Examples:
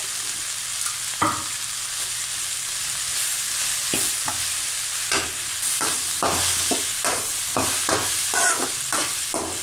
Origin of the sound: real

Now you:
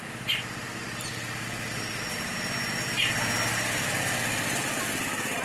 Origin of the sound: real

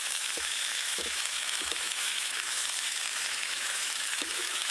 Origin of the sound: fake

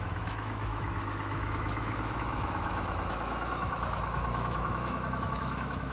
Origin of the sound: fake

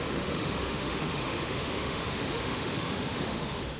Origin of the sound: fake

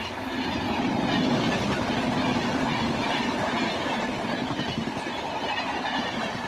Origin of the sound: real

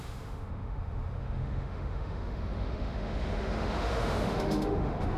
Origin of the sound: fake